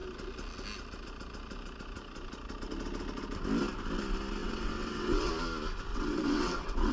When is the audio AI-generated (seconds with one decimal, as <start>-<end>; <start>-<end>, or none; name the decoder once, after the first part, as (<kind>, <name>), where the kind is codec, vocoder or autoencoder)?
4.4-5.3 (vocoder, WaveNeXt); 5.9-6.9